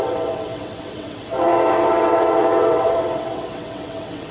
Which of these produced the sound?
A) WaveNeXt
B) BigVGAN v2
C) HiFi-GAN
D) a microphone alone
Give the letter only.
A